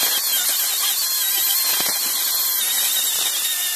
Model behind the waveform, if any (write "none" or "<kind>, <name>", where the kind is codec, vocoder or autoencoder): none